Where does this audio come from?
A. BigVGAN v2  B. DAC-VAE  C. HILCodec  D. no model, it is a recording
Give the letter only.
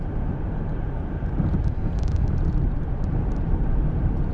A